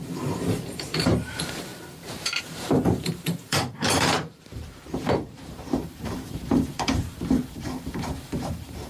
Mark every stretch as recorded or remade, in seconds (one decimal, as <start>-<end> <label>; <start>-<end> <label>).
0.0-1.7 remade; 1.7-2.4 recorded; 2.4-8.9 remade